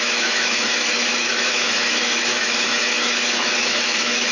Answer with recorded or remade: remade